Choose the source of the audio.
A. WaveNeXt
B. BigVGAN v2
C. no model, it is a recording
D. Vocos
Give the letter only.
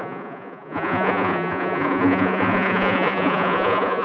D